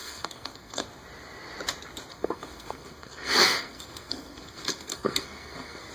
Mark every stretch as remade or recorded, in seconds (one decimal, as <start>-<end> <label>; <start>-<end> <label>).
0.0-0.8 remade; 0.8-2.1 recorded; 2.1-5.9 remade